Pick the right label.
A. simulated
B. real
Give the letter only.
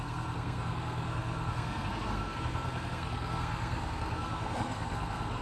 A